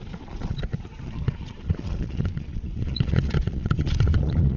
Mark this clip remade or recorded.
remade